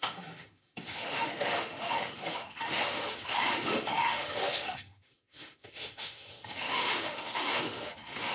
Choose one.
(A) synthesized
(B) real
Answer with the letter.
A